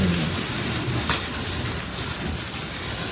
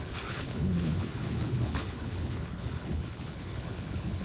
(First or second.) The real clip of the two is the first